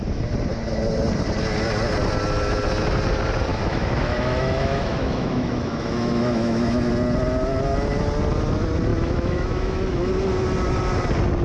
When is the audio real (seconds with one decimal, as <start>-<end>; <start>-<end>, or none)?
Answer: 0.0-3.5; 6.9-8.9; 10.1-11.4